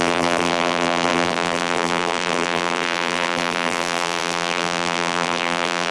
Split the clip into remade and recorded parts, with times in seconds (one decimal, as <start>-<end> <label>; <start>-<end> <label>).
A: 0.0-5.9 remade